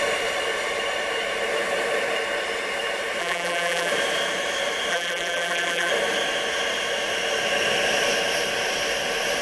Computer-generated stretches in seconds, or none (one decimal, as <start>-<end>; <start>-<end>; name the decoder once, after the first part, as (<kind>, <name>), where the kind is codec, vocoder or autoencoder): 3.2-3.9 (vocoder, BigVGAN v2); 4.9-5.9